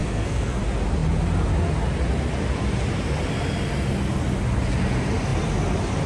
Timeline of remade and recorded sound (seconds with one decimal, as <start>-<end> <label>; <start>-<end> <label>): 0.0-0.6 remade; 0.6-6.1 recorded